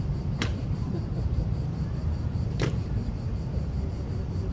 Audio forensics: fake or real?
fake